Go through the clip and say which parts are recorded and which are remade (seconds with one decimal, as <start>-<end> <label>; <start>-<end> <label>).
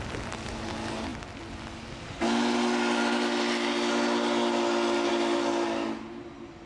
0.0-6.7 recorded